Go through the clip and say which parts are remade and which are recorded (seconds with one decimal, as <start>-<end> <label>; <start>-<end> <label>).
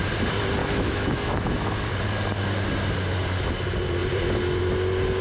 0.0-0.6 recorded; 0.6-1.9 remade; 1.9-5.2 recorded